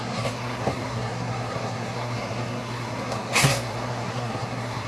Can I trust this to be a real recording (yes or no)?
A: no